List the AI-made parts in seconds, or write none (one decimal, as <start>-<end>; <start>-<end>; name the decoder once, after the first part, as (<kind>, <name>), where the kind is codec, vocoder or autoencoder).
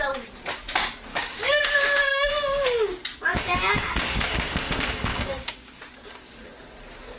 1.1-2.3 (codec, DAC); 3.3-5.8